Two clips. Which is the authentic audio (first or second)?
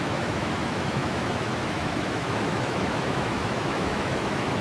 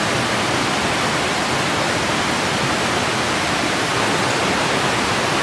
second